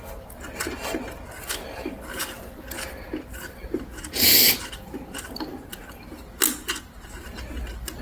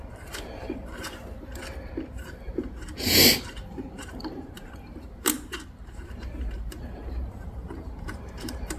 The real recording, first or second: first